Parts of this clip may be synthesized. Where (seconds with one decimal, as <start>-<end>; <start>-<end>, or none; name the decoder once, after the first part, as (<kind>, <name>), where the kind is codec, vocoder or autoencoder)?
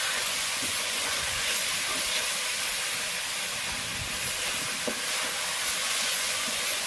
0.0-1.7 (vocoder, Vocos); 5.8-6.9